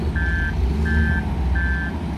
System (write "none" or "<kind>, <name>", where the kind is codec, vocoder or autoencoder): none